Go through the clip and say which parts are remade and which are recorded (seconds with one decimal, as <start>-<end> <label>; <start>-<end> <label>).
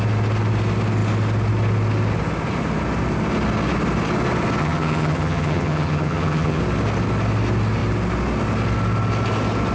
0.0-4.6 recorded; 4.6-6.6 remade; 6.6-9.7 recorded